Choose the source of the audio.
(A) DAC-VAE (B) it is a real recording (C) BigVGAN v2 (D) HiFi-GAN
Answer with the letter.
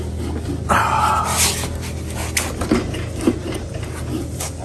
B